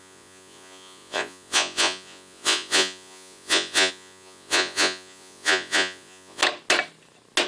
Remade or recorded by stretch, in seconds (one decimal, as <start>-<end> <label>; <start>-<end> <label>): 0.0-6.4 remade; 6.4-7.5 recorded